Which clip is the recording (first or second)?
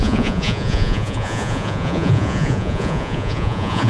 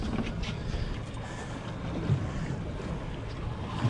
second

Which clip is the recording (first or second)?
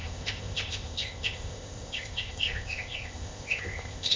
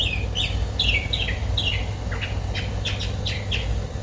second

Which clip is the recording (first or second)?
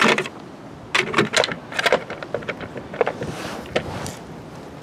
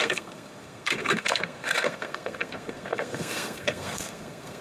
first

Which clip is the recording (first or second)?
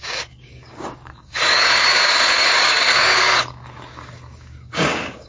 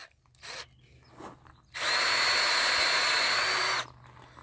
second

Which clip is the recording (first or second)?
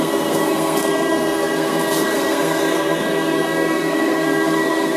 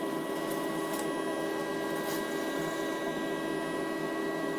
second